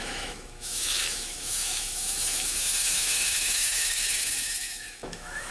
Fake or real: fake